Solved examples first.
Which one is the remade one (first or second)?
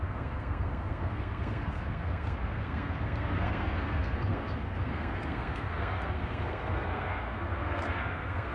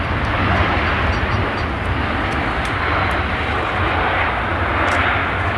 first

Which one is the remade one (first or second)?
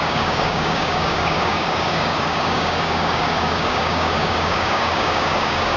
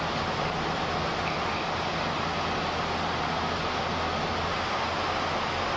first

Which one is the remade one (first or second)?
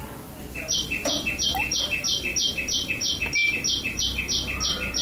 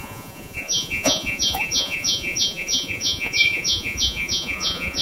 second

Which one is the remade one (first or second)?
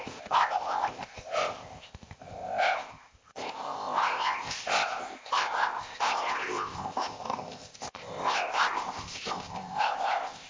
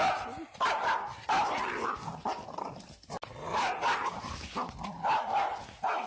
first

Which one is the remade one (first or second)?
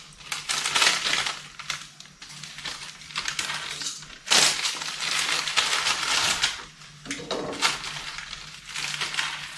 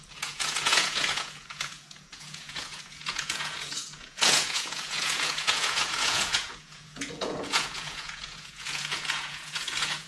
second